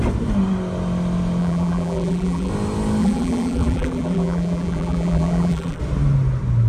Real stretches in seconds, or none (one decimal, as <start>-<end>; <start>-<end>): 0.0-1.4; 2.5-3.0; 5.8-6.7